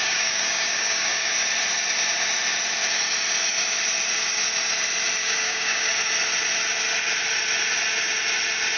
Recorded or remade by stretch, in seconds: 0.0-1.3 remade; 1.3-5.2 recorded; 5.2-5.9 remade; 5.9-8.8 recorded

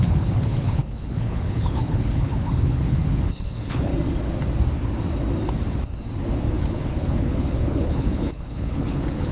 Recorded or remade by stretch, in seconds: 0.0-3.9 remade; 3.9-6.6 recorded; 6.6-9.3 remade

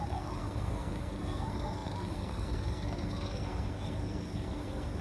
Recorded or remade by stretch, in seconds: 0.0-5.0 remade

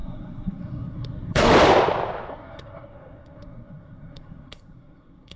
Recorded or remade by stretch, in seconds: 0.0-1.5 remade; 1.5-2.3 recorded; 2.3-5.4 remade